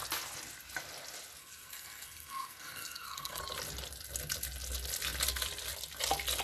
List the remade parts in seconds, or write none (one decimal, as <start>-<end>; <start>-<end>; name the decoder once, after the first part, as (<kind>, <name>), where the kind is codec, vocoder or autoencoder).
1.4-3.4 (codec, SNAC)